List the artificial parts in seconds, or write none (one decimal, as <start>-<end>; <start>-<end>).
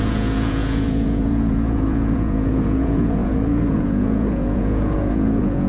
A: 0.0-5.7